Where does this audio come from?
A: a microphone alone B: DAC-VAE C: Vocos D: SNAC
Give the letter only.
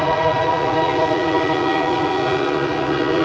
C